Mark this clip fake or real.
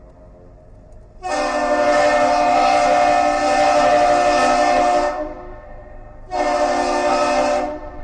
real